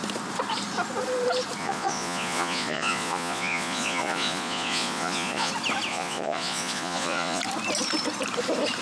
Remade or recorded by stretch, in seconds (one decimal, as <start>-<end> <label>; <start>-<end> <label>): 0.0-1.6 recorded; 1.6-5.5 remade; 5.5-5.9 recorded; 5.9-7.4 remade; 7.4-8.8 recorded